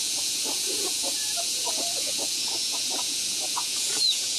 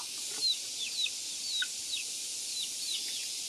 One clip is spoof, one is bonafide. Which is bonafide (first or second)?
second